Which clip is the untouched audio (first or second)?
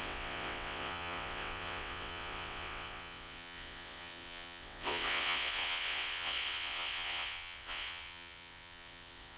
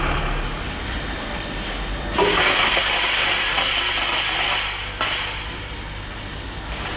second